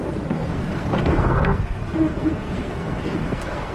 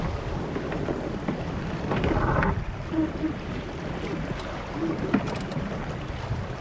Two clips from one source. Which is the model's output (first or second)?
first